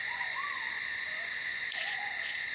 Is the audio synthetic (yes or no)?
yes